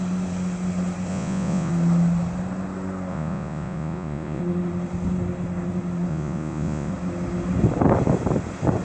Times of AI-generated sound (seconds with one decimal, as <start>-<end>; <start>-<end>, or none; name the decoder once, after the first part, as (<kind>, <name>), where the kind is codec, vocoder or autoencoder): 1.1-1.7 (vocoder, Vocos); 3.1-4.4; 6.1-6.9